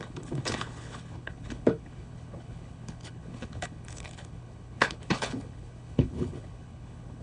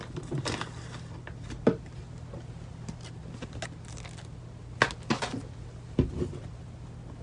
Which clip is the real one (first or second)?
second